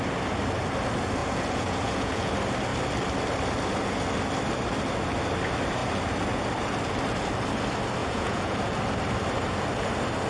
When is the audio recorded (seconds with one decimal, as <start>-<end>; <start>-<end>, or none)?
0.0-1.2; 2.3-8.0; 8.7-10.3